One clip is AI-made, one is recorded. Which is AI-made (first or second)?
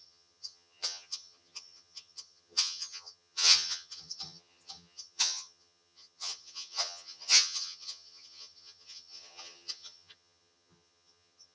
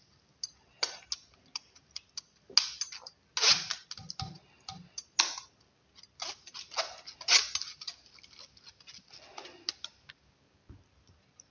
first